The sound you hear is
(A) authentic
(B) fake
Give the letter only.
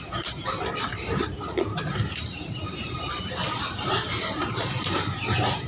B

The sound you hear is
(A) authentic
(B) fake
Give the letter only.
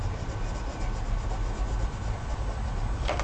A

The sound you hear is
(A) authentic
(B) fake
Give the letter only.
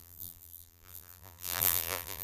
B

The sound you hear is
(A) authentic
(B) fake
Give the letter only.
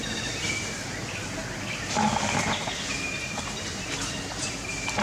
A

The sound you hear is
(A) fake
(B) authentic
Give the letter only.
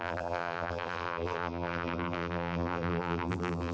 A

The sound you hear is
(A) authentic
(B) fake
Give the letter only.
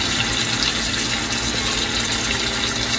A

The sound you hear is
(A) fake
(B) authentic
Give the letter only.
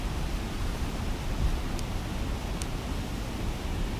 B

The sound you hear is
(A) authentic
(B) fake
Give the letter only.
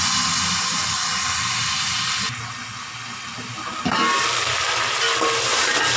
A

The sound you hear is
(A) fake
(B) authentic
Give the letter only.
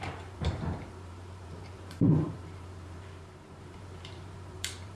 A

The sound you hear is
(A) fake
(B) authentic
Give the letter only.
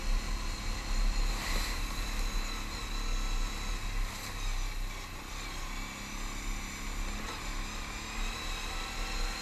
B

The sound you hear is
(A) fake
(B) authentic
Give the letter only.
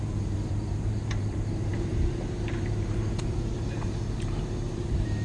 A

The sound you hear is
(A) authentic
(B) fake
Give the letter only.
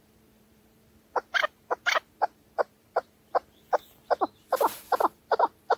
B